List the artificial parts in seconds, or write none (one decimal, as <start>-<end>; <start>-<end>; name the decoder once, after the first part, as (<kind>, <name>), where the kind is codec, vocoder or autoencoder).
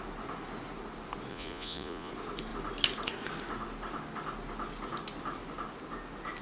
1.3-2.1 (vocoder, Vocos)